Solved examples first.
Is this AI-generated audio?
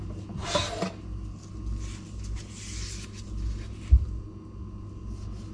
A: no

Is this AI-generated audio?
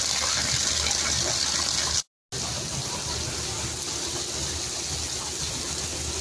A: no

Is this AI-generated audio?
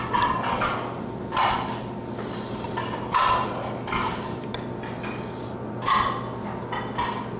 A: no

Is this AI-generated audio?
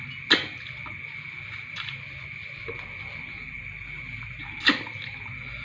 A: no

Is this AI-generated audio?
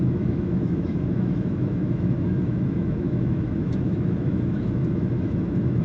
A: yes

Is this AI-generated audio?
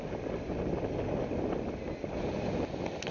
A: no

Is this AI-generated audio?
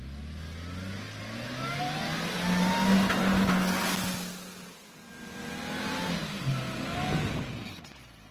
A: no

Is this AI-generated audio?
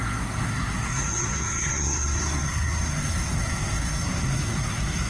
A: yes